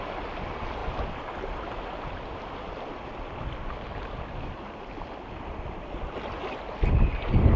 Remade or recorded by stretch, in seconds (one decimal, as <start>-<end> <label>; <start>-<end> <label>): 0.0-7.6 recorded